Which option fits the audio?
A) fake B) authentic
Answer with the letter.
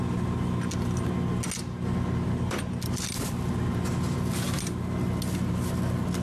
B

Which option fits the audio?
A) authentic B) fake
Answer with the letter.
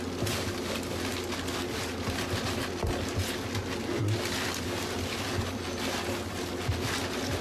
A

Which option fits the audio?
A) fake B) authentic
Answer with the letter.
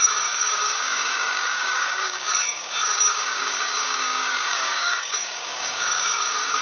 A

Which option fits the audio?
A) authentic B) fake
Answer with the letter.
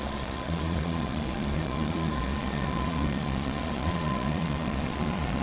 B